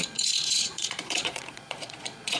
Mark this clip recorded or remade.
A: remade